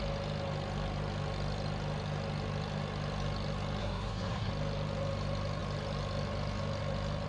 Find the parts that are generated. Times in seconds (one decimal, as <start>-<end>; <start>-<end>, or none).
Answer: 3.8-4.5